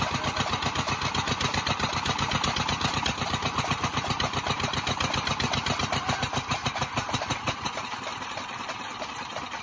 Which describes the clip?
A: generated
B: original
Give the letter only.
B